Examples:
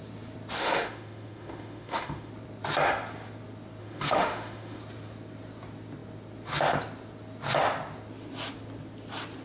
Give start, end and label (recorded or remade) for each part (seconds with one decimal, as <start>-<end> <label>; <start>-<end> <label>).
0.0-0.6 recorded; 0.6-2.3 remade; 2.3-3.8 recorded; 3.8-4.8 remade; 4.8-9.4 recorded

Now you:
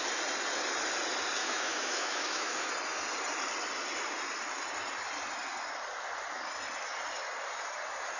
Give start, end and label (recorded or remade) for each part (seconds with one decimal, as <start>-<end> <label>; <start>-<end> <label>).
0.0-1.4 recorded; 1.4-2.7 remade; 2.7-8.2 recorded

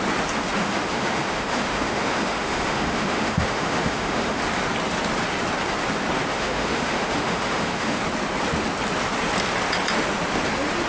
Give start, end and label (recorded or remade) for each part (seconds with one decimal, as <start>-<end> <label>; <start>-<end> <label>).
0.0-0.6 recorded; 0.6-4.4 remade; 4.4-6.3 recorded; 6.3-8.0 remade; 8.0-10.9 recorded

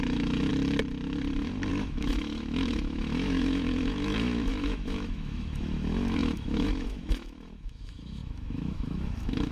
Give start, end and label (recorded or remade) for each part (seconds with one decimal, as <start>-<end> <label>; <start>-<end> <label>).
0.0-0.5 remade; 0.5-1.7 recorded; 1.7-9.5 remade

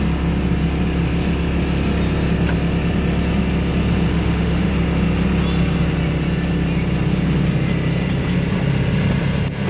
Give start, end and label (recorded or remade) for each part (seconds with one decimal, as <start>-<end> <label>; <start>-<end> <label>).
0.0-4.1 recorded; 4.1-4.7 remade; 4.7-9.7 recorded